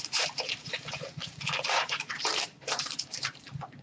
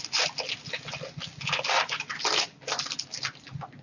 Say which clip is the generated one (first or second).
first